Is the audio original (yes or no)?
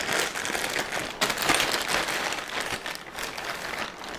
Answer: yes